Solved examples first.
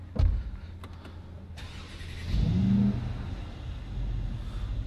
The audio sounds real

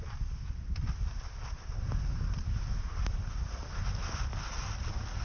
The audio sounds real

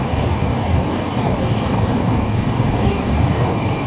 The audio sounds fake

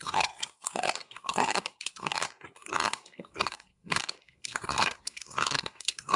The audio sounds fake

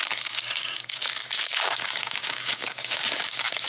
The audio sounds fake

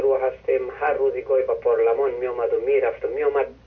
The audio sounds real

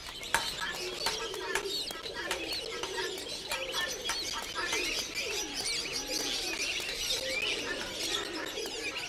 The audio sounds real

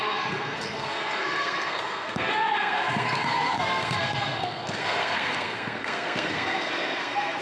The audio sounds fake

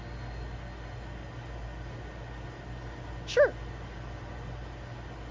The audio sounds real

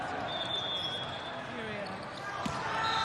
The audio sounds real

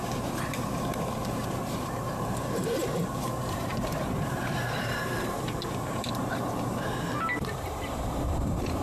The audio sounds fake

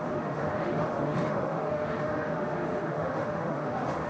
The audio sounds fake